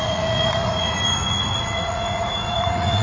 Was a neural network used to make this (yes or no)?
yes